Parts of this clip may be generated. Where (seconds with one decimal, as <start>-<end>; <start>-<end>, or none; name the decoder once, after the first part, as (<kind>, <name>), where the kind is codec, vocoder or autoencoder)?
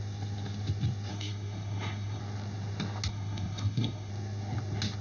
1.1-2.2 (codec, SNAC); 3.1-4.1